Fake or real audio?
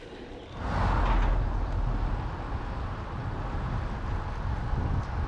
real